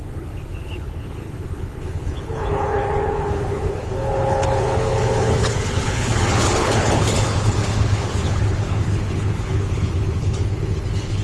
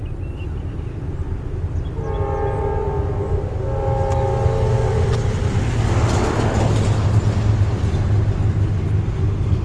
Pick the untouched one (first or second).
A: second